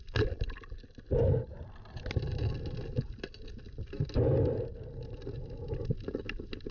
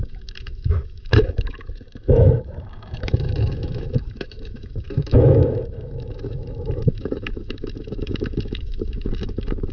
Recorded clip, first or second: first